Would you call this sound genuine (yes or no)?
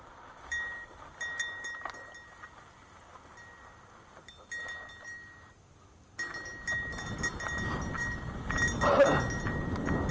yes